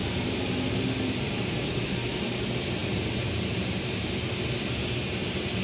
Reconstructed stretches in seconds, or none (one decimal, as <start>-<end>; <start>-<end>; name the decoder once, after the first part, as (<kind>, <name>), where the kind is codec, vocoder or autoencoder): 0.0-0.5 (vocoder, BigVGAN v2); 2.8-4.2